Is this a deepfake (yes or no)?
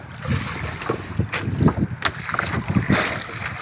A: no